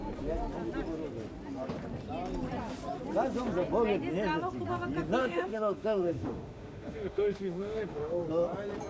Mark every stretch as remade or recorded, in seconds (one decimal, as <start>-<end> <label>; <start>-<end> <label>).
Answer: 0.0-5.2 recorded; 5.2-8.2 remade; 8.2-8.9 recorded